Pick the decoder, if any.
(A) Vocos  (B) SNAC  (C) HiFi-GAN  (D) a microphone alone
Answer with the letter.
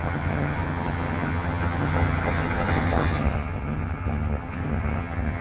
C